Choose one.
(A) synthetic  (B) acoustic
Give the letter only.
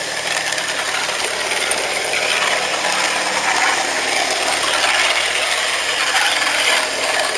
B